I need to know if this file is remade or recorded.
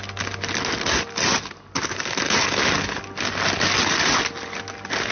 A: recorded